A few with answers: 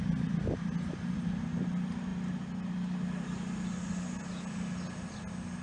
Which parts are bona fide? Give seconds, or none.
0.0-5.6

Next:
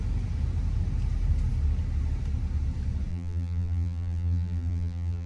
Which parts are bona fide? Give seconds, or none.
0.0-3.1

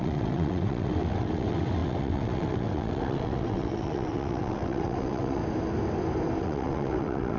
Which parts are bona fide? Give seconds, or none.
5.4-6.4